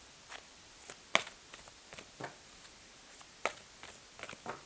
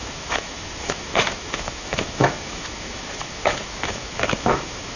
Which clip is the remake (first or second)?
second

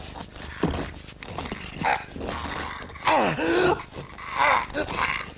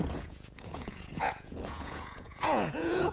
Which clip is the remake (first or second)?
second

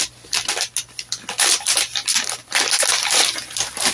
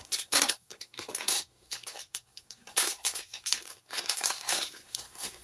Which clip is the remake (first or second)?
second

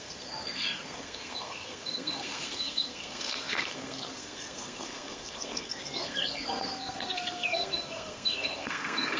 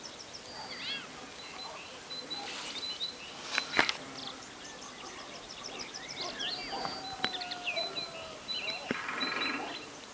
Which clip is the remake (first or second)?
first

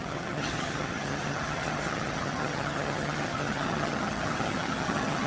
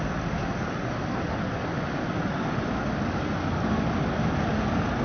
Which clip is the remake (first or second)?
first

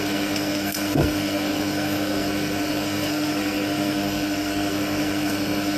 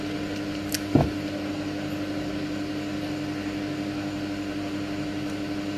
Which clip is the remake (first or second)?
first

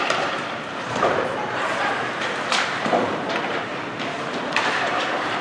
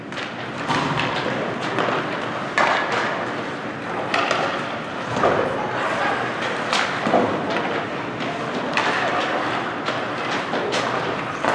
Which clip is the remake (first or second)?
first